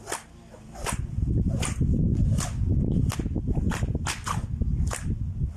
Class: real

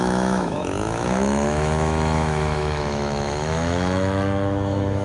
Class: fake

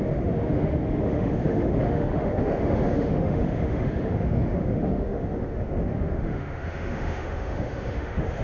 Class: fake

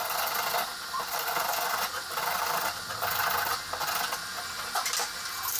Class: real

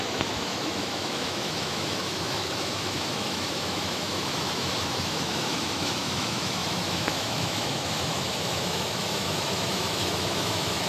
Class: fake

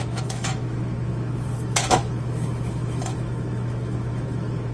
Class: fake